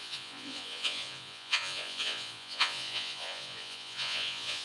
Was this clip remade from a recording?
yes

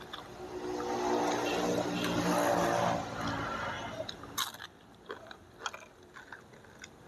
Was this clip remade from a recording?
no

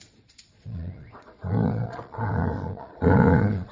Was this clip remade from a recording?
yes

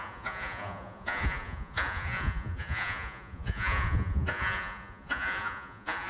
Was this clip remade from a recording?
yes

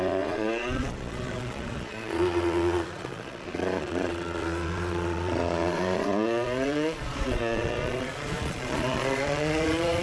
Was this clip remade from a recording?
yes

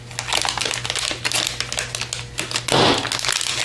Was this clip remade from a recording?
no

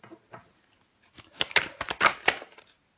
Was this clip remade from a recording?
no